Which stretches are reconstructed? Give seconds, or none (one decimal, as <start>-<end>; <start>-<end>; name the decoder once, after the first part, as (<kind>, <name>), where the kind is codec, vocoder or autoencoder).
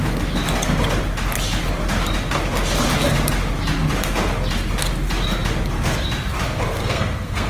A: 6.8-7.5 (codec, SNAC)